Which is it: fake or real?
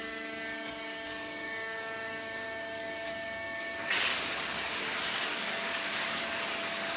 fake